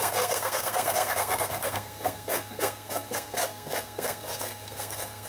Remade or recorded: remade